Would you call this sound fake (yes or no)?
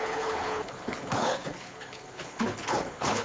yes